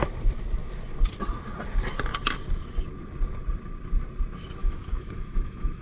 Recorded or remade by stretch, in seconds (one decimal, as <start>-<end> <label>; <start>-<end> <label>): 0.0-4.6 recorded; 4.6-5.8 remade